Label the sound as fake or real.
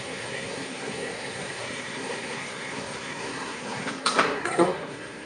fake